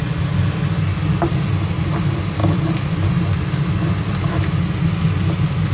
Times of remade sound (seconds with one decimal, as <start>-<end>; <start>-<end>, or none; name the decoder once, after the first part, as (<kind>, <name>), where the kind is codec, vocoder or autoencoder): 0.9-1.8 (vocoder, BigVGAN v2)